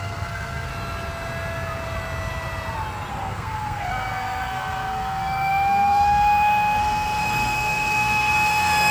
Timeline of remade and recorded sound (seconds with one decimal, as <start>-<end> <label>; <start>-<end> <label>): 0.0-0.7 remade; 0.7-3.1 recorded; 3.1-8.9 remade